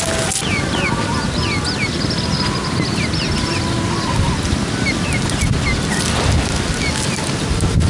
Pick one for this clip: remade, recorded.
recorded